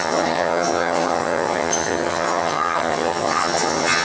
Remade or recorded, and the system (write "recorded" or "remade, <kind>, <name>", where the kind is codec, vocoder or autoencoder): remade, vocoder, HiFi-GAN